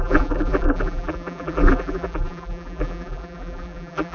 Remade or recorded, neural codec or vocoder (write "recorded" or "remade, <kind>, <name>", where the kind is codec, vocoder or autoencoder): remade, vocoder, BigVGAN v2